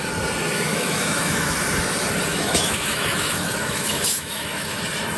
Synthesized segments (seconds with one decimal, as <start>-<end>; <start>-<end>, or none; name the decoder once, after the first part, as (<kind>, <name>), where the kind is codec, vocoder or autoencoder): 0.7-1.6 (autoencoder, DAC-VAE); 2.3-4.8